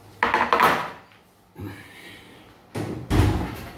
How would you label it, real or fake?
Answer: real